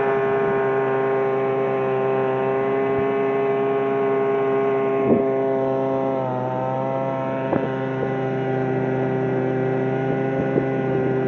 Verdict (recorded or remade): recorded